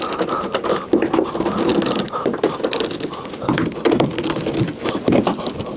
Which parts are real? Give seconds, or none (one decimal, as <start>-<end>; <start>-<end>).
0.0-5.8